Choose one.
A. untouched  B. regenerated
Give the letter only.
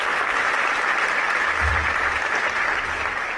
B